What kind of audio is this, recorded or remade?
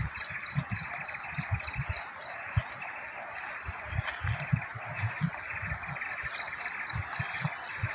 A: recorded